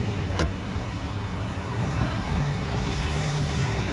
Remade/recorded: remade